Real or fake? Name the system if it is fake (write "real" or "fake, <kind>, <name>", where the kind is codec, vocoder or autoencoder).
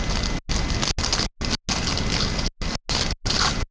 real